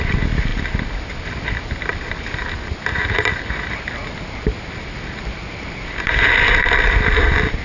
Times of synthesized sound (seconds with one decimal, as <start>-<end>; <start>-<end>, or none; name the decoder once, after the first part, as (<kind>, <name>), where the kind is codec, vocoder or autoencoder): none